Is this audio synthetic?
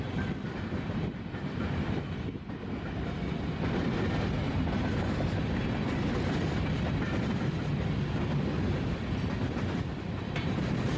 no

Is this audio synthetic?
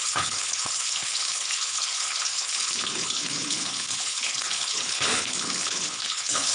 yes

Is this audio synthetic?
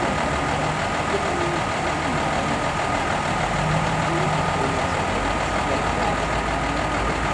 no